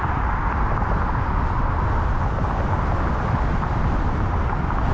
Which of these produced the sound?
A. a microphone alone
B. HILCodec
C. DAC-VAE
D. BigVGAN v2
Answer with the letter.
A